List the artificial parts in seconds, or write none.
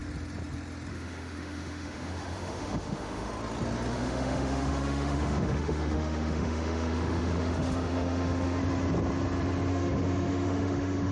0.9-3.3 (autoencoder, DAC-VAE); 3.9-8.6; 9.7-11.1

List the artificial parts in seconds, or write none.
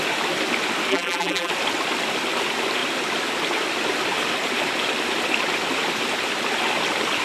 0.9-1.5 (vocoder, BigVGAN v2)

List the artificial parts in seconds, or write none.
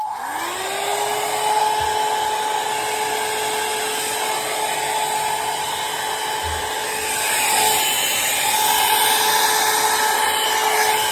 none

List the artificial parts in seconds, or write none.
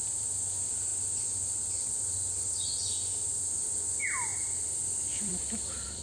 4.3-6.0 (vocoder, BigVGAN v2)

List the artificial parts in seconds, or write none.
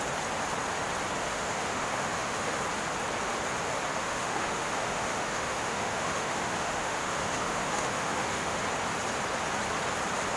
1.2-2.6 (autoencoder, DAC-VAE); 4.0-8.6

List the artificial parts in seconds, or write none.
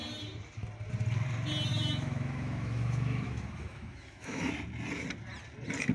1.7-4.5 (autoencoder, DAC-VAE)